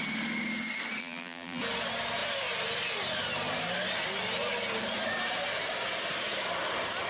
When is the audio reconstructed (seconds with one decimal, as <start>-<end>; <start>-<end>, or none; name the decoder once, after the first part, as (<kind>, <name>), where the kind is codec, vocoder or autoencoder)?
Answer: 1.0-1.6 (vocoder, BigVGAN v2)